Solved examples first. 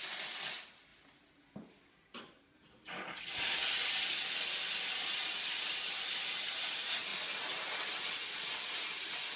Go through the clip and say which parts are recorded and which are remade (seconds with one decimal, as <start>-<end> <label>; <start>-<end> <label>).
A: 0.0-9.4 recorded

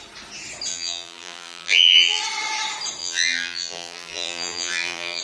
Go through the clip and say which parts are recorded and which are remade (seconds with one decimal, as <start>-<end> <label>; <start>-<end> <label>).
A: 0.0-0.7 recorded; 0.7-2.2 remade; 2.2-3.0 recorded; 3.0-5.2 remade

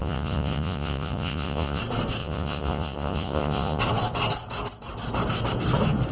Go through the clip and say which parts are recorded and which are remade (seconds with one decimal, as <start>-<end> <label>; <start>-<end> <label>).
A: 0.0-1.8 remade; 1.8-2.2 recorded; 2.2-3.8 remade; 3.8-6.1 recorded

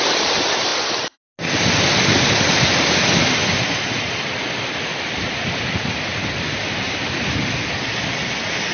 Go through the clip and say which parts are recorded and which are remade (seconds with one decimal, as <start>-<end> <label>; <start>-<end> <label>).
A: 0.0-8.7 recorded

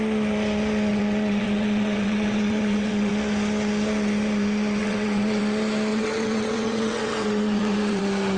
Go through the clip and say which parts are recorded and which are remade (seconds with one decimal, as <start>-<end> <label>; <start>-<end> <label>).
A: 0.0-0.9 recorded; 0.9-3.1 remade; 3.1-4.8 recorded; 4.8-5.4 remade; 5.4-5.9 recorded; 5.9-8.0 remade; 8.0-8.4 recorded

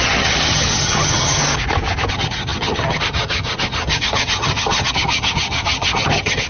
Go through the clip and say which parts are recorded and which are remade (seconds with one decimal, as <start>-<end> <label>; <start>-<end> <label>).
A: 0.0-1.4 remade; 1.4-2.1 recorded; 2.1-6.5 remade

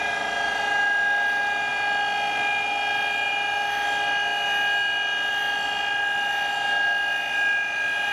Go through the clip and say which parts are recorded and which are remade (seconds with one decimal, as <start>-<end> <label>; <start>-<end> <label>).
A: 0.0-8.1 recorded